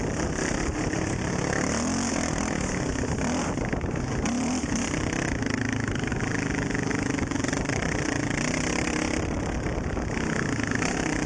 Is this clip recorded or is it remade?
recorded